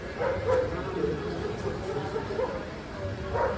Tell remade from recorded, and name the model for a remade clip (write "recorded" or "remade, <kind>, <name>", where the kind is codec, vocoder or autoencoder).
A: remade, vocoder, BigVGAN v2